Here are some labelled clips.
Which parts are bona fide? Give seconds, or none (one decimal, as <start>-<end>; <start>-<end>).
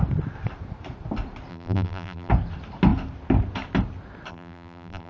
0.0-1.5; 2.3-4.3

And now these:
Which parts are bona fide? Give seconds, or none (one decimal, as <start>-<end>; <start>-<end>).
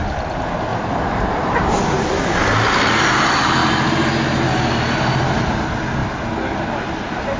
0.0-0.7; 1.7-7.4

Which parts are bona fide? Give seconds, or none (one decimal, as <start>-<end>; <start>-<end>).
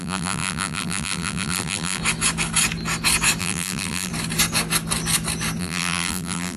2.0-3.4; 4.1-5.6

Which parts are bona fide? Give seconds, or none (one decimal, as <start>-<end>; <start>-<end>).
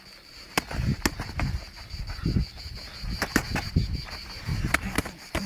0.0-5.5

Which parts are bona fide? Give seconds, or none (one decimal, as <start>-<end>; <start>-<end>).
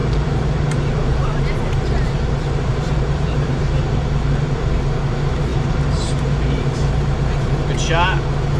4.7-5.5; 7.7-8.6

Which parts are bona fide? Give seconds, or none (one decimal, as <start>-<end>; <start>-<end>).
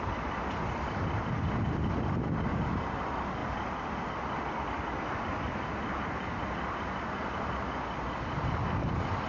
0.0-2.5; 3.0-5.8; 6.5-9.3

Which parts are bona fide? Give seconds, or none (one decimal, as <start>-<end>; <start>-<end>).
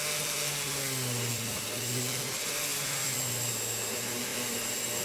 0.0-1.3; 2.0-2.7; 3.5-4.3